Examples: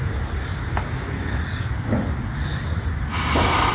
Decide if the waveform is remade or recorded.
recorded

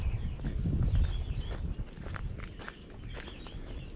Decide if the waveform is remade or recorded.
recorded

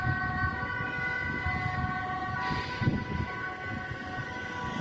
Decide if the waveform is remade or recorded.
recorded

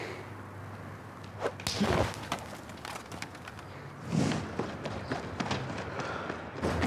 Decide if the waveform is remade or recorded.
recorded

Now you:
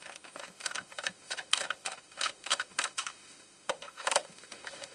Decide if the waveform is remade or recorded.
remade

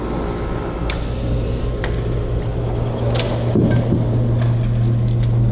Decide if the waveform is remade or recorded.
recorded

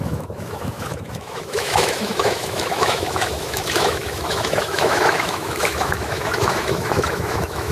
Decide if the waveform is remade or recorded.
remade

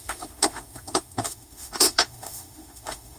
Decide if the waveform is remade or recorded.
remade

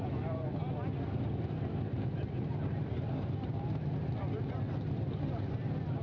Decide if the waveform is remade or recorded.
recorded